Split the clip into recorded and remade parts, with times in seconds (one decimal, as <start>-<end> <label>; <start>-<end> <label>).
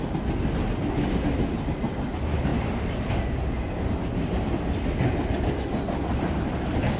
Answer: 0.0-2.5 recorded; 2.5-3.1 remade; 3.1-7.0 recorded